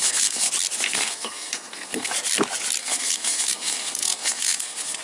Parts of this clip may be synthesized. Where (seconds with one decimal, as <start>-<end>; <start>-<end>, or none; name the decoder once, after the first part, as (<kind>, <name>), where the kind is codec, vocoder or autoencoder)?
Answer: 0.0-0.5 (codec, SNAC); 0.9-2.1; 2.8-5.0